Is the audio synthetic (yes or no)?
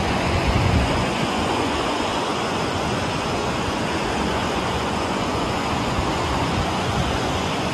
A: yes